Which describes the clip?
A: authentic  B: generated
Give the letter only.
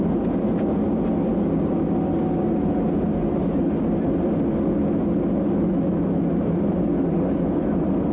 A